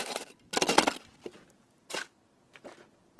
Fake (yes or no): no